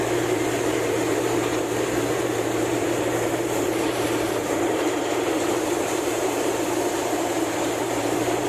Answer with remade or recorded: remade